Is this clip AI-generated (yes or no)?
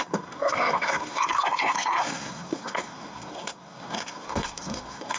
yes